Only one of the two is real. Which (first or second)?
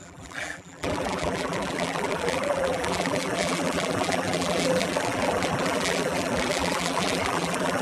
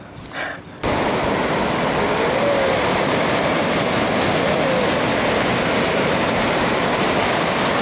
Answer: second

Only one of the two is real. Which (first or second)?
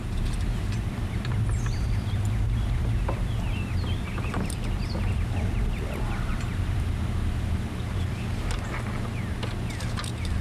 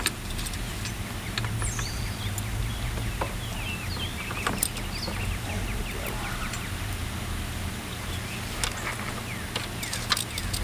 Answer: second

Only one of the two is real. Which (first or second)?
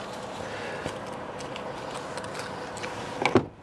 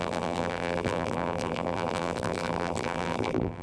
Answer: first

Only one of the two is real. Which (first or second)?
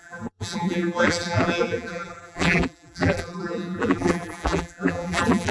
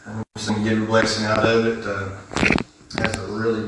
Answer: second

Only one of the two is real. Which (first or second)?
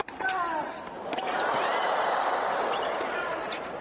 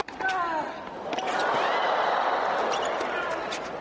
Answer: second